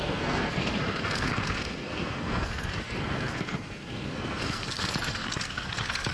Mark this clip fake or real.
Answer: fake